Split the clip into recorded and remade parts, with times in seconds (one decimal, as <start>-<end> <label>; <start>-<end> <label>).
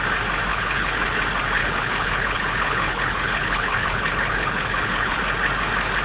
0.0-0.5 recorded; 0.5-1.2 remade; 1.2-1.6 recorded; 1.6-5.2 remade; 5.2-6.0 recorded